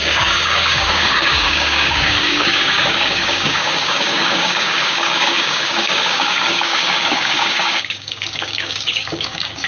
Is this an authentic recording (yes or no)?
no